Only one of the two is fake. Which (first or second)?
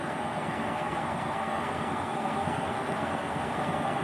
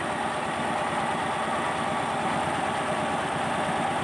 first